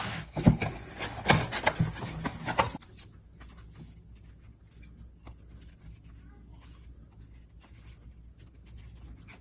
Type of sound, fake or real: real